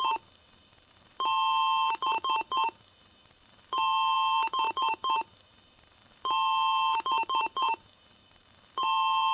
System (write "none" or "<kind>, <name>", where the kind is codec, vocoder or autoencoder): vocoder, BigVGAN v2